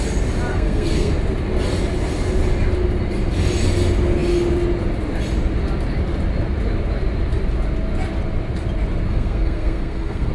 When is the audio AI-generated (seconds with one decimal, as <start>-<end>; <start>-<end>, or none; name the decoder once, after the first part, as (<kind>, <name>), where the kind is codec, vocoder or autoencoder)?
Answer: 0.5-1.1 (codec, SNAC); 9.1-10.3